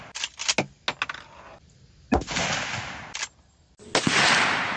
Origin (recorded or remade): recorded